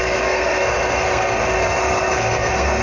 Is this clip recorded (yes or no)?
no